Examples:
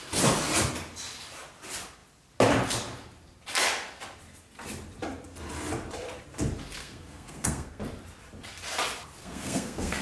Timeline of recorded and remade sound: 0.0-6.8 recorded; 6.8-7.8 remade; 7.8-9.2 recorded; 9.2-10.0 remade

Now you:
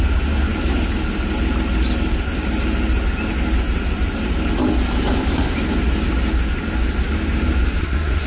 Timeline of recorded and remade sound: 0.0-7.8 recorded; 7.8-8.3 remade

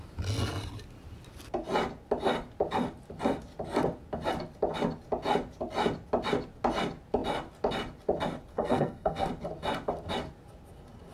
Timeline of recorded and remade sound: 0.0-8.5 recorded; 8.5-9.3 remade; 9.3-11.1 recorded

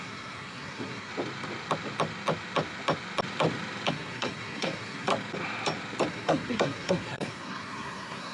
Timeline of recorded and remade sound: 0.0-1.1 remade; 1.1-3.9 recorded; 3.9-5.1 remade; 5.1-6.1 recorded; 6.1-8.3 remade

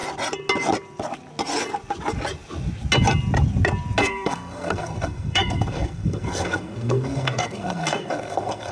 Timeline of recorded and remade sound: 0.0-4.0 recorded; 4.0-8.7 remade

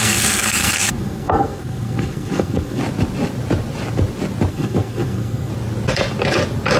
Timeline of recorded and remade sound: 0.0-2.8 remade; 2.8-4.5 recorded; 4.5-5.5 remade; 5.5-6.8 recorded

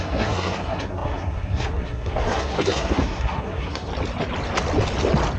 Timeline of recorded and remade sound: 0.0-3.9 remade; 3.9-5.4 recorded